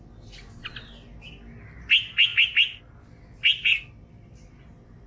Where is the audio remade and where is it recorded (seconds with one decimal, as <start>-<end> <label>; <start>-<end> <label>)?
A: 0.0-5.1 recorded

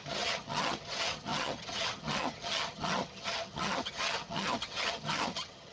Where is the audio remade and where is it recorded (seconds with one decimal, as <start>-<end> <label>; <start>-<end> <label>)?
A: 0.0-5.7 remade

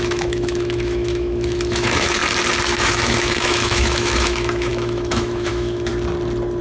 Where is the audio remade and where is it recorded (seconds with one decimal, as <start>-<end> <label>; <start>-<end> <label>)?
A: 0.0-2.2 remade; 2.2-2.8 recorded; 2.8-5.9 remade; 5.9-6.6 recorded